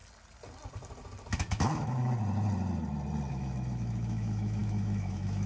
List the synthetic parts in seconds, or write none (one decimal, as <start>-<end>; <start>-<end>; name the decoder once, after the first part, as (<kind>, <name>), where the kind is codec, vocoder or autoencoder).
1.3-2.0 (autoencoder, DAC-VAE); 3.3-5.5